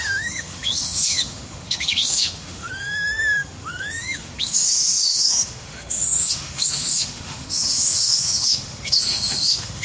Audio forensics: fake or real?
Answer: fake